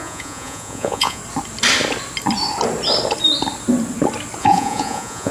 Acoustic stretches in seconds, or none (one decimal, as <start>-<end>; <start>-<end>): 1.2-4.4